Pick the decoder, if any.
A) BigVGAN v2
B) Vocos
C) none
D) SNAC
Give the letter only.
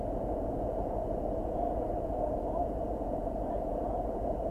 B